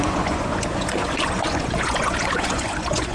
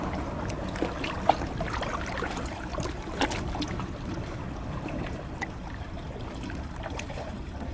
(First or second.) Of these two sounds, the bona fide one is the second